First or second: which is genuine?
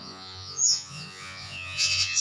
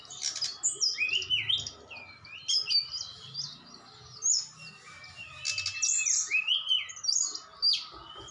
second